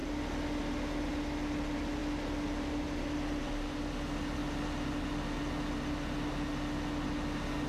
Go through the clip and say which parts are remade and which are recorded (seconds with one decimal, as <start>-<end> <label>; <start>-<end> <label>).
0.0-7.7 recorded